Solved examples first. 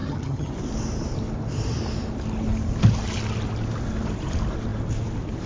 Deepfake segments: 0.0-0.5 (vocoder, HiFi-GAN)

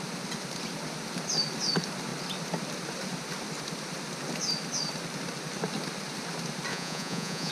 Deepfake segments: 6.7-7.5 (vocoder, Vocos)

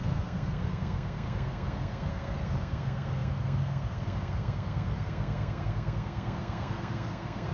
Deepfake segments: 0.0-7.5 (codec, SNAC)

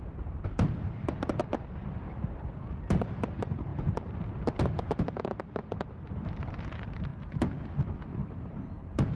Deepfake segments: 0.0-7.1 (vocoder, BigVGAN v2); 8.0-9.2